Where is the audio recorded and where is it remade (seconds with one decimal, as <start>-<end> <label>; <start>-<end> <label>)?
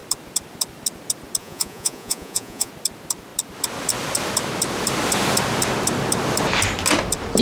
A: 0.0-1.4 recorded; 1.4-2.7 remade; 2.7-7.4 recorded